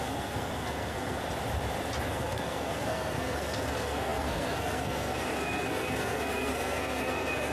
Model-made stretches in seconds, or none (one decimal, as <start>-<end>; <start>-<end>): 0.0-1.2; 2.0-7.5